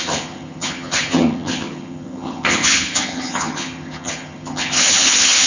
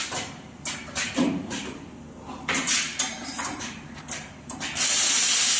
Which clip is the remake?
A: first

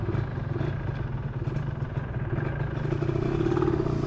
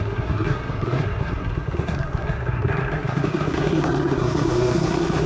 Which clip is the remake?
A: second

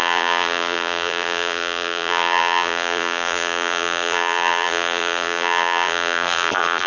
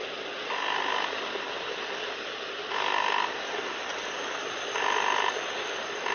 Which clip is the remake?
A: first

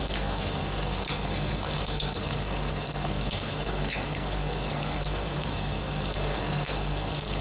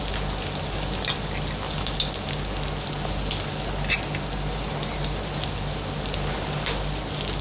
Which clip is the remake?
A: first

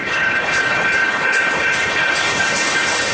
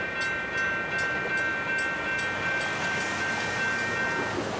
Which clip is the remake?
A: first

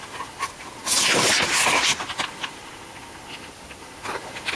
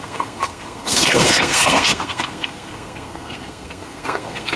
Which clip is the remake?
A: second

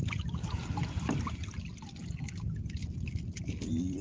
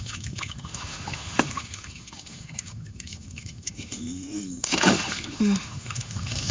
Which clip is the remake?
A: second